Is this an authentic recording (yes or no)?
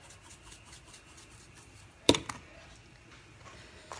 yes